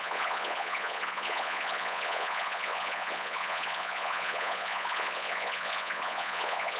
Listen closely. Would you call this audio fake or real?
fake